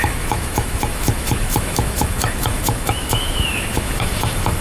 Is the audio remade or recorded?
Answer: remade